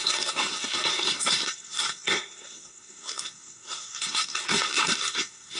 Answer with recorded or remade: remade